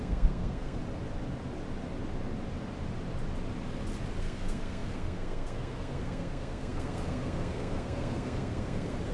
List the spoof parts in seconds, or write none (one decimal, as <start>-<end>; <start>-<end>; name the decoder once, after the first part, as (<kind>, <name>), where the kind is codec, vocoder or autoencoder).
0.0-0.8 (codec, SNAC); 4.2-9.1